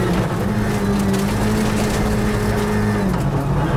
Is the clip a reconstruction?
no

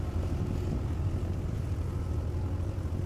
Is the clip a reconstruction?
no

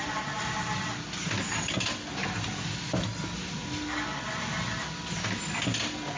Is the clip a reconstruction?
no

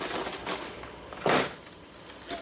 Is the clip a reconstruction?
no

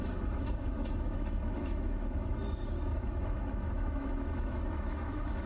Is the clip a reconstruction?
yes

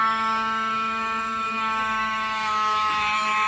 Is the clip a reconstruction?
yes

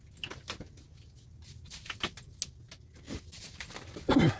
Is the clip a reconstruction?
no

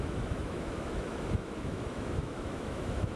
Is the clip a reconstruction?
yes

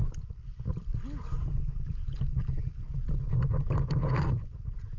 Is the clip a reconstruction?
no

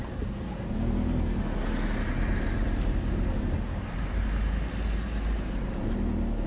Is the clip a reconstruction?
no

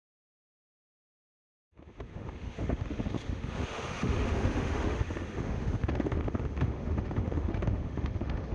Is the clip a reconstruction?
yes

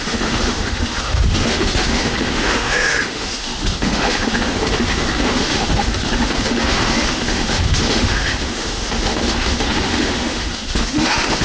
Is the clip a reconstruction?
yes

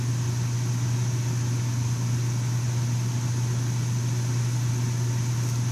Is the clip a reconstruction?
no